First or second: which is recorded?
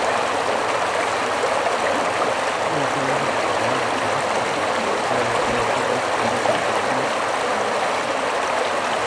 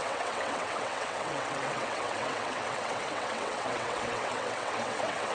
first